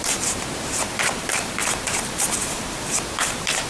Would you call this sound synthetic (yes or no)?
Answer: yes